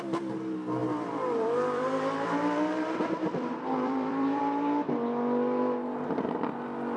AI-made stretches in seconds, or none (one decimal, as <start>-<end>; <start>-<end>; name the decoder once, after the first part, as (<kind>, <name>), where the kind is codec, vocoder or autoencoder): 0.8-4.4 (vocoder, BigVGAN v2)